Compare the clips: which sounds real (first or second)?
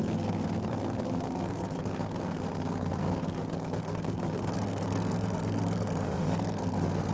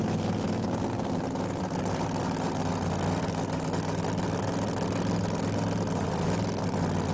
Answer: second